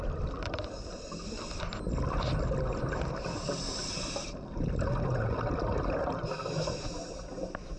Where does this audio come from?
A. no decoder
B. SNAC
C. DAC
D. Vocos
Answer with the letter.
A